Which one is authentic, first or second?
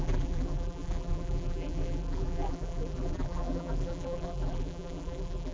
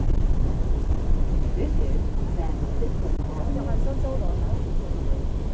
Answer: second